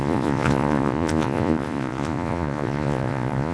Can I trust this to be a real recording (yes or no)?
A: no